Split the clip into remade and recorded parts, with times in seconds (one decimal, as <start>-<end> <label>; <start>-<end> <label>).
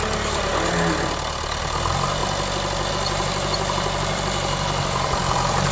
0.0-0.5 remade; 0.5-1.6 recorded; 1.6-2.2 remade; 2.2-2.9 recorded; 2.9-5.7 remade